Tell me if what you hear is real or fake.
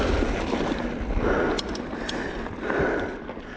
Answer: real